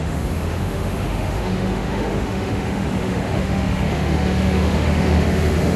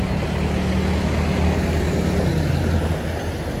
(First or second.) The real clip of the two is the second